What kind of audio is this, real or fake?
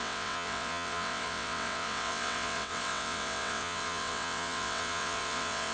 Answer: fake